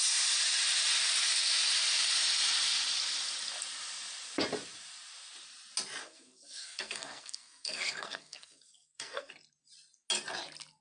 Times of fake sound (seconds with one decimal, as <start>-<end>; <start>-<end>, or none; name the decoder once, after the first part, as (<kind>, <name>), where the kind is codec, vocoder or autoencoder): 6.0-9.3 (codec, SNAC)